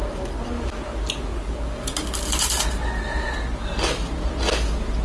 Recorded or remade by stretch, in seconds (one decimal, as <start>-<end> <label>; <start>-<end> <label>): 0.0-5.0 recorded